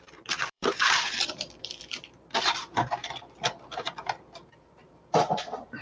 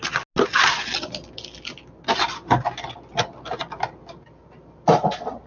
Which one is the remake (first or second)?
first